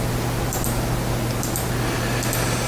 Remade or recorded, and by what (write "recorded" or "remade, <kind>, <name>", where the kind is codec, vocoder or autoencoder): recorded